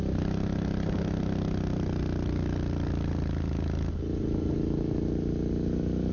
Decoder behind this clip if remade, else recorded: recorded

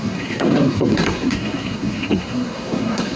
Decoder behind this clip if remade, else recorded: remade, codec, SNAC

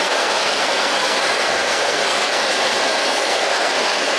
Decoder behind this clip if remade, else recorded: remade, codec, SNAC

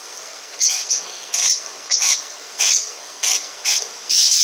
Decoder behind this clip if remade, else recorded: remade, codec, SNAC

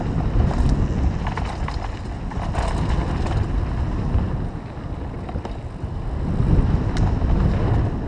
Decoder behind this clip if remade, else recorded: recorded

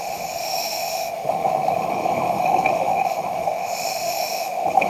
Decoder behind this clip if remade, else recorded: remade, autoencoder, DAC-VAE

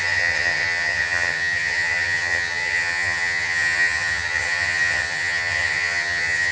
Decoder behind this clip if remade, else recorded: remade, vocoder, HiFi-GAN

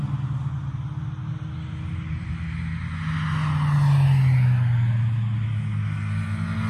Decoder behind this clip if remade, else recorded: recorded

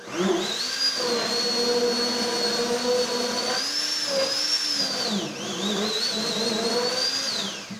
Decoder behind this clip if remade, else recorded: recorded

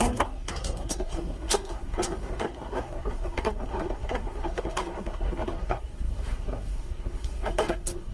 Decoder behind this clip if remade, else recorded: remade, codec, SNAC